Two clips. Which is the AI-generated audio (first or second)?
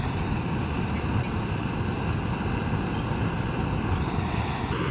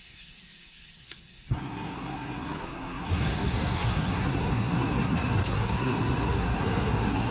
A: second